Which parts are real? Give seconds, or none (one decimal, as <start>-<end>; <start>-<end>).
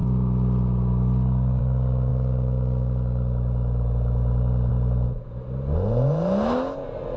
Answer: 0.0-7.2